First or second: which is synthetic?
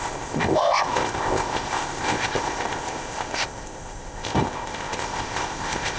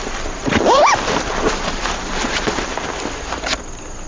first